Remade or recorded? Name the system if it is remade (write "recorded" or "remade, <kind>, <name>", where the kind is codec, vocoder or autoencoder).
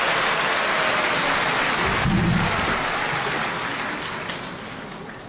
recorded